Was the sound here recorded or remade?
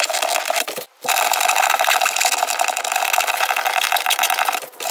recorded